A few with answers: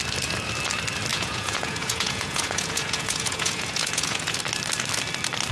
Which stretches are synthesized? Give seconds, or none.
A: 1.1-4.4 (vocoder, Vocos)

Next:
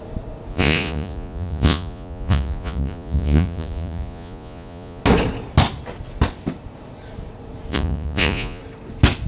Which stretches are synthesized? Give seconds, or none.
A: 0.5-5.0 (vocoder, Vocos); 7.7-8.6